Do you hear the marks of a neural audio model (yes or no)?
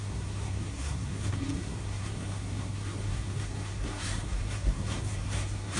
yes